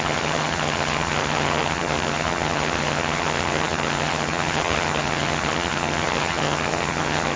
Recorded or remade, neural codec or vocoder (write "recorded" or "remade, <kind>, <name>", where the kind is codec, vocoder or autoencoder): remade, vocoder, HiFi-GAN